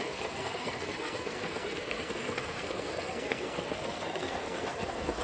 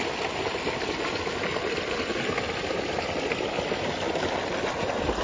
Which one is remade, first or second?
first